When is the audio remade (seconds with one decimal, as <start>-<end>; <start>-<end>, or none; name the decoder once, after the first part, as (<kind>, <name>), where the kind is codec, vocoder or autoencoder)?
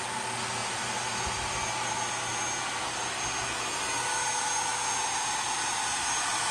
none